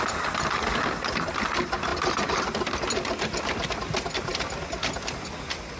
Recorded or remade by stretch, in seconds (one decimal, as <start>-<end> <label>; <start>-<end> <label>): 0.0-5.8 recorded